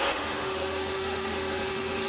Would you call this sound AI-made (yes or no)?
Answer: yes